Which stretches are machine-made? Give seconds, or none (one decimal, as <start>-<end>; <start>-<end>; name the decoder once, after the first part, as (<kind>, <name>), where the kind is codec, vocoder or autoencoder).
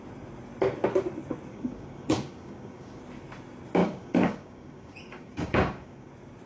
1.5-3.0 (codec, DAC); 3.8-6.1